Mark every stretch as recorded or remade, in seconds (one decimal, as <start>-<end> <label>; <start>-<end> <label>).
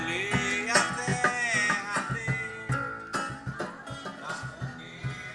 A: 0.0-5.3 recorded